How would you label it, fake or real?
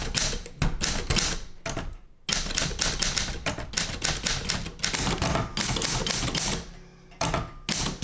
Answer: real